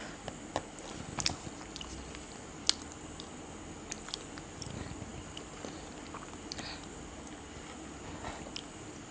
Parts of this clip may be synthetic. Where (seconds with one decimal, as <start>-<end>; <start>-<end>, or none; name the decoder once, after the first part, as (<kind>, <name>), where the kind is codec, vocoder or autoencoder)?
none